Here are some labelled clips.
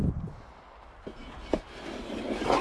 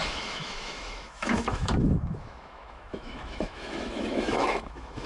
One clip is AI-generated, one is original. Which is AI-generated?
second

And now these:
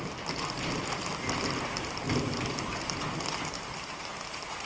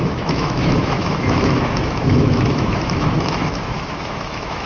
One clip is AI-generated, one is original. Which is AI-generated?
second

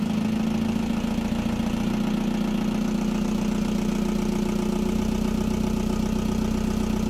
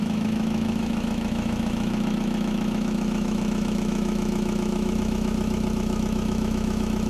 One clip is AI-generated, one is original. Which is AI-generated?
second